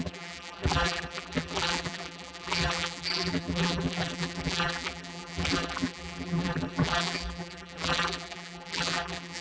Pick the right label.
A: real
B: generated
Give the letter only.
B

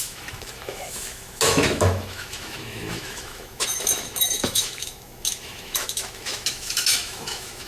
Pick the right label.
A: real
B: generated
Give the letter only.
B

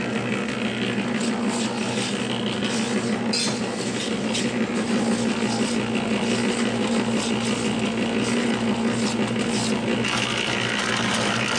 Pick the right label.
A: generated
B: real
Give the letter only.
B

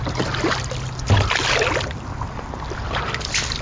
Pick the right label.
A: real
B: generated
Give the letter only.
A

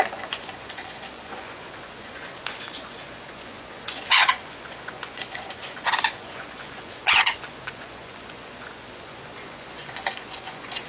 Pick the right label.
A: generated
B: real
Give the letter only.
A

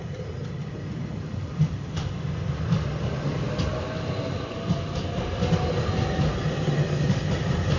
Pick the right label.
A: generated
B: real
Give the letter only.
B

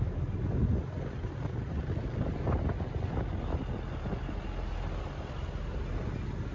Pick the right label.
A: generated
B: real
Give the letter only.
B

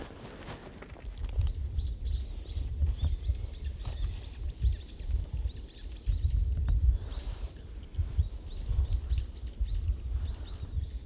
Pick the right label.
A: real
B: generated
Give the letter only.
A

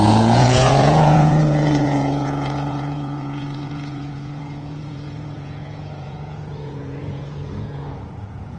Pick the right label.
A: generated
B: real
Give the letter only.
A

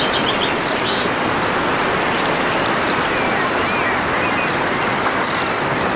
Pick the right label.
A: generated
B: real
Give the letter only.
B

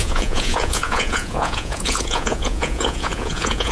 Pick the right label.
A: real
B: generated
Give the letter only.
B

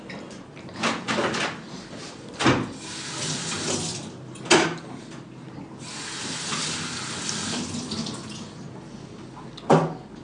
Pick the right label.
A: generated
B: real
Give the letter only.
B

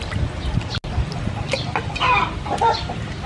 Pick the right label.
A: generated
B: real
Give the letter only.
B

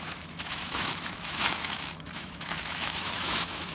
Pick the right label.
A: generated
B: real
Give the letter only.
A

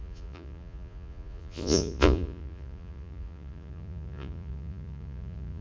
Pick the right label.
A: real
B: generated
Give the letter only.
B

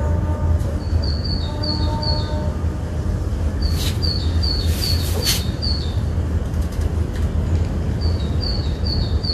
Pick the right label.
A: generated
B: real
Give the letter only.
B